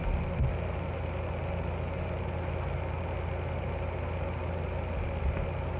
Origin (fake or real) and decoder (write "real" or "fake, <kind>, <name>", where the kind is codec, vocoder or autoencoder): real